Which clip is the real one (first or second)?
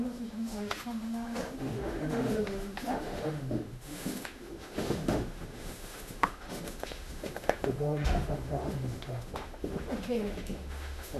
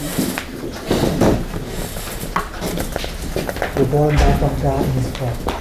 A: second